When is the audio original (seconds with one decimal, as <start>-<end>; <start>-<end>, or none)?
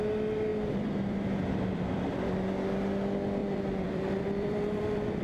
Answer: 0.0-0.5; 2.2-3.4